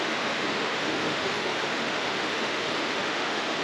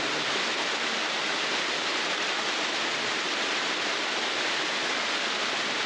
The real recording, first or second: second